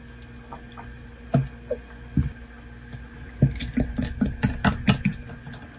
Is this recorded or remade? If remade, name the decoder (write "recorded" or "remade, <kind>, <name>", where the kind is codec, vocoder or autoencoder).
recorded